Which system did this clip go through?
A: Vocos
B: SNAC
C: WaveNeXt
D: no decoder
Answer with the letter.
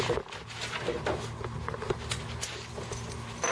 D